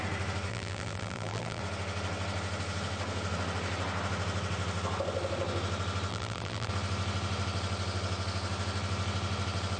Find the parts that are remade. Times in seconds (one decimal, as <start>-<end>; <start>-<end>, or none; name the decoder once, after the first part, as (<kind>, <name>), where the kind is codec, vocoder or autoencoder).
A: 0.5-1.6 (vocoder, BigVGAN v2); 6.1-6.7